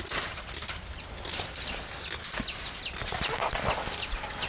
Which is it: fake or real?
real